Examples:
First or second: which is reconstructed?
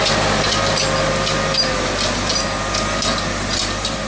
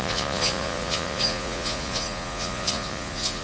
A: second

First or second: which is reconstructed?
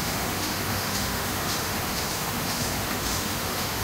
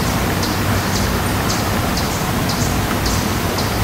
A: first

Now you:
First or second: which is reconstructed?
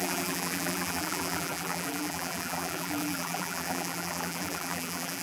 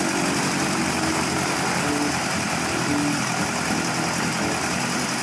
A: first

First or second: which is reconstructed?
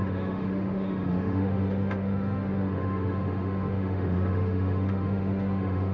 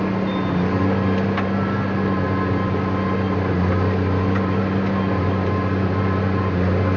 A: first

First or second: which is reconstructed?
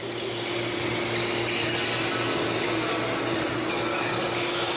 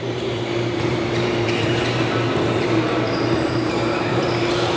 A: second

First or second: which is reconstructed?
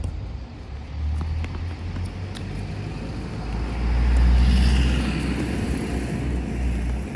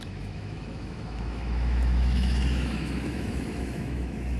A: second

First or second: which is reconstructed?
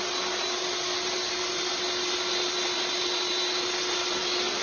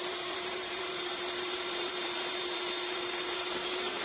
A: second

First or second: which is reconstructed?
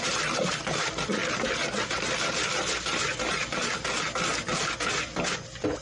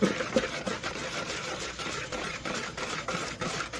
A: second